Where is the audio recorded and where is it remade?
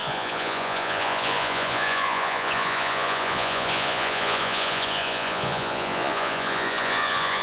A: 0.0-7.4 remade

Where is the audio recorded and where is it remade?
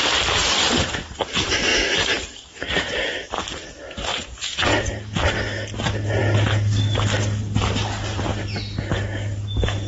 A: 0.0-4.1 recorded; 4.1-4.9 remade; 4.9-9.9 recorded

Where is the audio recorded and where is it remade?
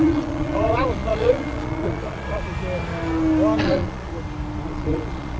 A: 0.0-2.5 remade; 2.5-3.6 recorded; 3.6-4.1 remade; 4.1-4.7 recorded; 4.7-5.4 remade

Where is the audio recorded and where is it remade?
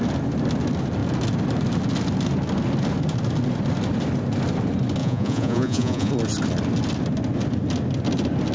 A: 0.0-5.0 recorded; 5.0-6.1 remade; 6.1-8.5 recorded